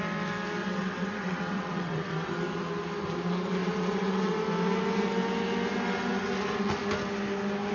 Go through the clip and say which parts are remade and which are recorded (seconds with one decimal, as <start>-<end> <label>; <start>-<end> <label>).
0.0-0.6 recorded; 0.6-2.3 remade; 2.3-3.6 recorded; 3.6-4.4 remade; 4.4-7.7 recorded